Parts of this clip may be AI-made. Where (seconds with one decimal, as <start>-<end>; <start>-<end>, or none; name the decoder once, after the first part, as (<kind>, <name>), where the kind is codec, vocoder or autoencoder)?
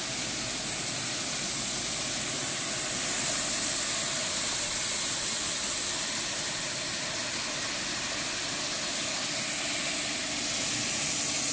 none